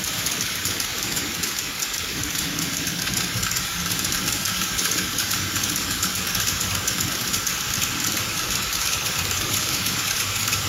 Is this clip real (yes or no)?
no